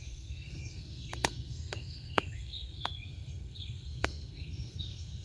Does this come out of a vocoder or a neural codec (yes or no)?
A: yes